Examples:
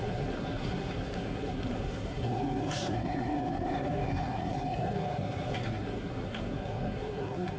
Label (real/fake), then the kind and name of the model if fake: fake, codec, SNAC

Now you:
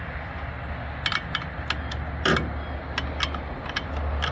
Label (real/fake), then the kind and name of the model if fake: real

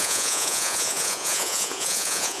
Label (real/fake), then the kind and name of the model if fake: fake, vocoder, Vocos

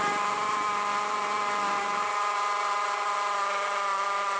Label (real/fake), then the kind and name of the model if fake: real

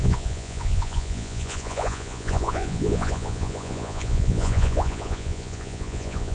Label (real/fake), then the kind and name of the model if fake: fake, vocoder, Vocos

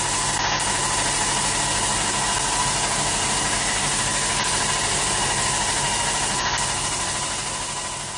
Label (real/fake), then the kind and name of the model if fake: real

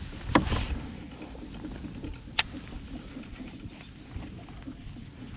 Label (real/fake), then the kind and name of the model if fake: real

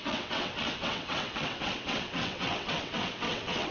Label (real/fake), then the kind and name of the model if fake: fake, vocoder, WaveNeXt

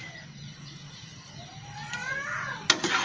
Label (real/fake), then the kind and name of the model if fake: real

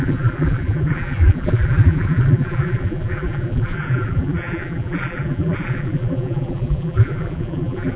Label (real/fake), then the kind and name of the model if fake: fake, vocoder, BigVGAN v2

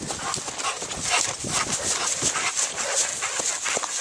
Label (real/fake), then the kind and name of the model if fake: real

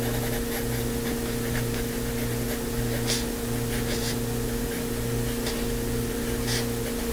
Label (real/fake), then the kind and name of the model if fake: real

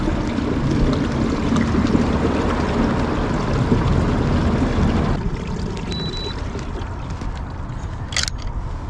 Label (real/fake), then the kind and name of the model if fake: real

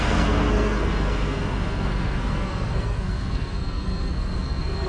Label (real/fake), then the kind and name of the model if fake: fake, codec, SNAC